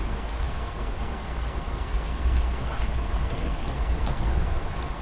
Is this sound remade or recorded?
remade